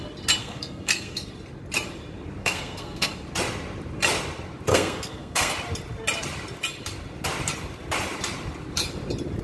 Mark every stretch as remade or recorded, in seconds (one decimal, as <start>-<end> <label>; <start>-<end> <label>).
0.0-0.4 recorded; 0.4-1.3 remade; 1.3-2.4 recorded; 2.4-3.1 remade; 3.1-4.7 recorded; 4.7-5.5 remade; 5.5-9.4 recorded